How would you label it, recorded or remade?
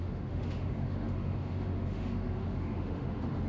remade